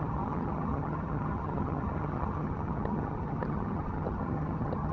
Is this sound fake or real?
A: fake